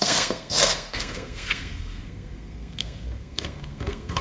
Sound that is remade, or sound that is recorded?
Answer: remade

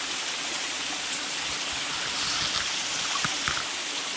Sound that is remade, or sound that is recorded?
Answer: recorded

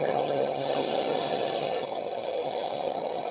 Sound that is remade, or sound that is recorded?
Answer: remade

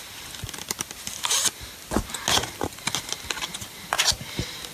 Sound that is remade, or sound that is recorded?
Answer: recorded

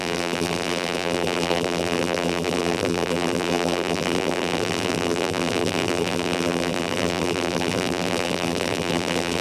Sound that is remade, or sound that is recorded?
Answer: remade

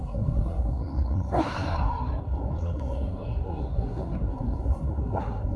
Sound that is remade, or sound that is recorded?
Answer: remade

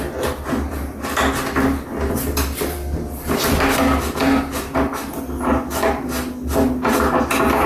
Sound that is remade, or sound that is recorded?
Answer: recorded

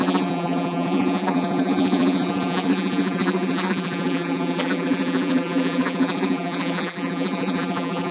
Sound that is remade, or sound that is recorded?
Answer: remade